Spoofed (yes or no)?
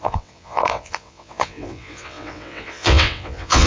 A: yes